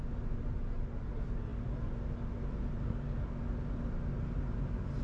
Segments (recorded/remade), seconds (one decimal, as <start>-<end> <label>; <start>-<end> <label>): 0.0-5.0 recorded